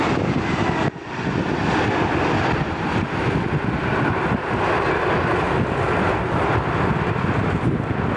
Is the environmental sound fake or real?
real